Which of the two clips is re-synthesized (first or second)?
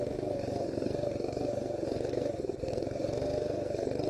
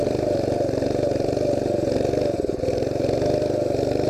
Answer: first